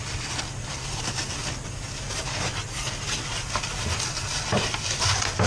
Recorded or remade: recorded